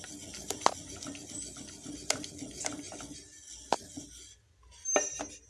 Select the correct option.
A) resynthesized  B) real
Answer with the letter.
B